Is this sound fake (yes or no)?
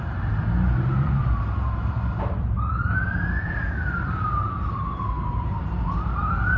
yes